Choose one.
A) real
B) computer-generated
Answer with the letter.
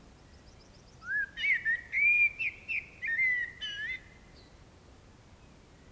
A